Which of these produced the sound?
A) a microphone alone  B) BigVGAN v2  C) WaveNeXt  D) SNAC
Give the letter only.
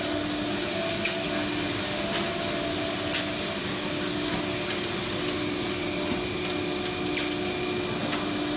A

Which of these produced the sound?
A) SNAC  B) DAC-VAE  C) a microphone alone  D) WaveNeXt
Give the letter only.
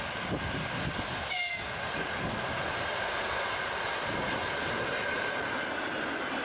C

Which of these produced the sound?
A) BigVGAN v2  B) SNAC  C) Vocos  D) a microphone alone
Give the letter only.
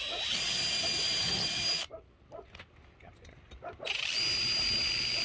D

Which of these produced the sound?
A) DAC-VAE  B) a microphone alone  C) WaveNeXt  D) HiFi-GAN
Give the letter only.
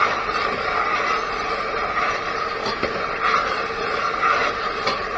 B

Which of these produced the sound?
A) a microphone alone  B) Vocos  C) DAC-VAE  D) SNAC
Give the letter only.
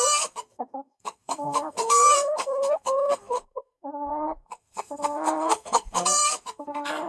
D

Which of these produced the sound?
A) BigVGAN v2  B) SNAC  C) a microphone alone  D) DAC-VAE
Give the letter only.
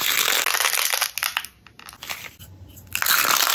C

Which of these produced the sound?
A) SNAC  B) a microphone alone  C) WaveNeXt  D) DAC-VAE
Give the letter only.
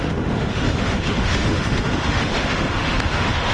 D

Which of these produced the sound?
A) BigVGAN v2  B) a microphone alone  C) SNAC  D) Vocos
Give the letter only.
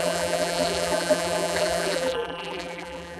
A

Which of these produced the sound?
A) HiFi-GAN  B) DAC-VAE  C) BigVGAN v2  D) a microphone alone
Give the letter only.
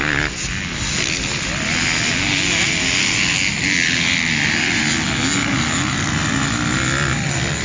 D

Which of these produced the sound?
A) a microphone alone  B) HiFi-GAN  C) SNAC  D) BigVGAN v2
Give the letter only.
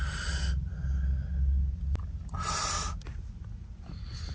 A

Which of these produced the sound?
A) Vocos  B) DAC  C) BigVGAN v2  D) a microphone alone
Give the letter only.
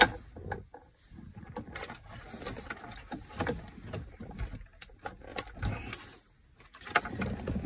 D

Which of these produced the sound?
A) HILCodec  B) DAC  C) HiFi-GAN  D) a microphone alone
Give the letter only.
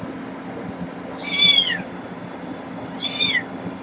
D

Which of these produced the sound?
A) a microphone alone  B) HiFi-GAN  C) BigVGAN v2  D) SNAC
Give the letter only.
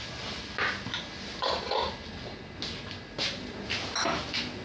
A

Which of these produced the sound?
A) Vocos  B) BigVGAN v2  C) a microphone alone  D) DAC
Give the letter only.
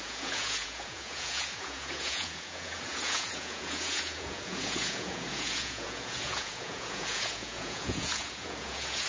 A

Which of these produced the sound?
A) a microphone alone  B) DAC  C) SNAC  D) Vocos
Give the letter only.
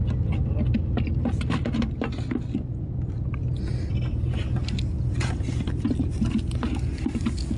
A